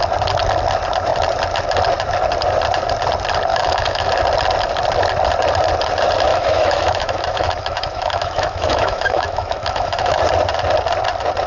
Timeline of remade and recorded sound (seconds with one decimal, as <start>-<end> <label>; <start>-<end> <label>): 0.0-3.5 recorded; 3.5-4.1 remade; 4.1-6.3 recorded; 6.3-10.2 remade; 10.2-11.5 recorded